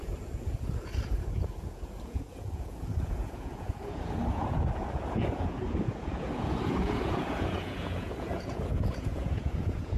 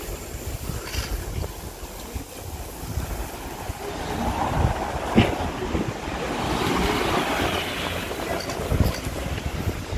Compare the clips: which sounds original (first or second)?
second